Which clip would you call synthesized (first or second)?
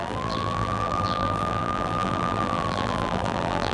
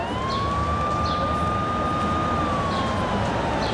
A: first